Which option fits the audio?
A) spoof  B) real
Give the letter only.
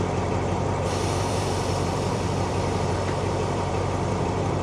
A